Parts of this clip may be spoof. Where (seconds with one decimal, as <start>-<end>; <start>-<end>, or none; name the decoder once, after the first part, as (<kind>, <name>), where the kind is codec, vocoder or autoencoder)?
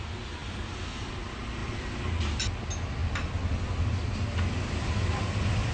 none